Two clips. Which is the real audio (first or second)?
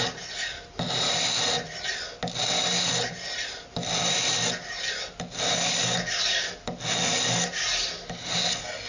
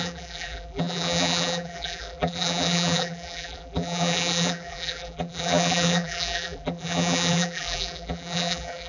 first